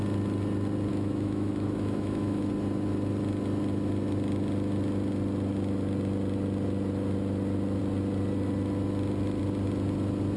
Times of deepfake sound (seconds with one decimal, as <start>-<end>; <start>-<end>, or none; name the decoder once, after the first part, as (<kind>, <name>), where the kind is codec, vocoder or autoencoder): 0.9-2.5 (autoencoder, DAC-VAE)